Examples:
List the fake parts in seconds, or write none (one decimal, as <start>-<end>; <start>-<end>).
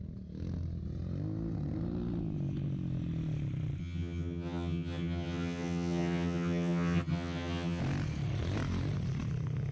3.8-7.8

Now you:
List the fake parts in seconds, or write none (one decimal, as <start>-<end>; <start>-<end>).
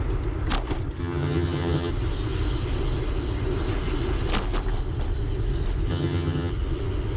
1.0-1.9; 5.9-6.5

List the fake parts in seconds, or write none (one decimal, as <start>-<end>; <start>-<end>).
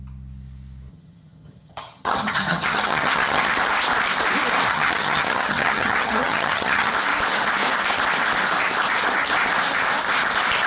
0.9-3.5; 4.7-6.9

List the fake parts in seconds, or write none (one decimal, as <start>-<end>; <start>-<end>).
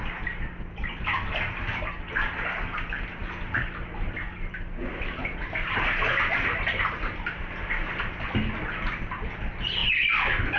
none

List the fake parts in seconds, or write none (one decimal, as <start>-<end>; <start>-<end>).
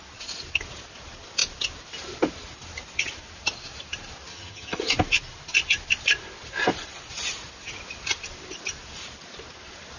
4.3-4.8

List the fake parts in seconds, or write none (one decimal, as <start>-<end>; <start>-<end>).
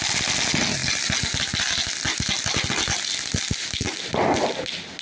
none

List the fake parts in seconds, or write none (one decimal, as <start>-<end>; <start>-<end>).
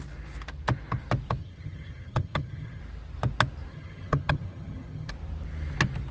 1.4-2.8; 3.7-5.1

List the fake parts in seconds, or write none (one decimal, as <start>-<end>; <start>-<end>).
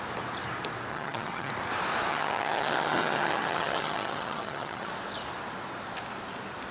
0.9-1.5; 2.1-4.9